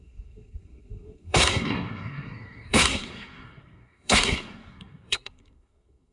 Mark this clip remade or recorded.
remade